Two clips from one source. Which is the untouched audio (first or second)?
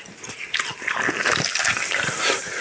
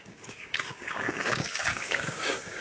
first